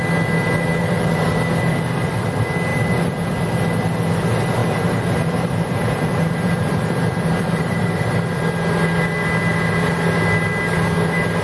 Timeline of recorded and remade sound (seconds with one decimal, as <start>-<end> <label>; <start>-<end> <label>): 0.0-0.8 recorded; 0.8-1.4 remade; 1.4-2.7 recorded; 2.7-3.3 remade; 3.3-4.6 recorded; 4.6-8.1 remade; 8.1-11.4 recorded